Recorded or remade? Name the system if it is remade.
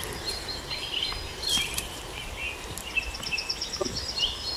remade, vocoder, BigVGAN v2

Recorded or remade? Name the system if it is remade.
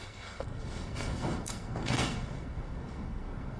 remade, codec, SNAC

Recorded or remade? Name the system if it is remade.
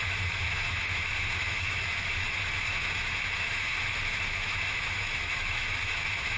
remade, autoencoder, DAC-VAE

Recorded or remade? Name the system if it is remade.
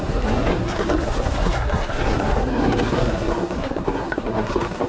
remade, codec, SNAC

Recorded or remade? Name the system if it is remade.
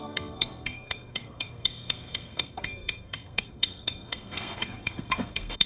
remade, codec, SNAC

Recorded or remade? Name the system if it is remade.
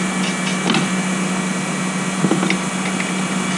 recorded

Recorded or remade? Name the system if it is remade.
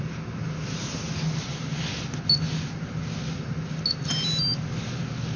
recorded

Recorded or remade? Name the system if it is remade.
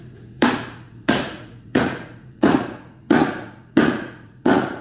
remade, vocoder, Vocos